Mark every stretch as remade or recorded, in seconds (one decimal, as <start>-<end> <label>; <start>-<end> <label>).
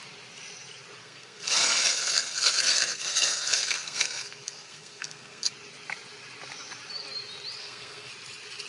0.0-1.0 recorded; 1.0-5.5 remade; 5.5-7.6 recorded; 7.6-8.1 remade; 8.1-8.7 recorded